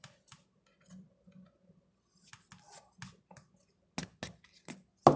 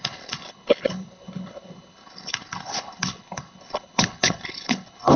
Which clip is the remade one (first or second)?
second